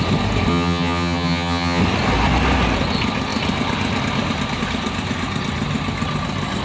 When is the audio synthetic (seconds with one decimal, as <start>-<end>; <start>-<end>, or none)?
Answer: 0.5-1.8